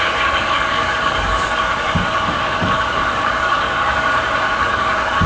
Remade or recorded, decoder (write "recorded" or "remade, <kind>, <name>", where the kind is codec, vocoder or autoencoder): remade, codec, DAC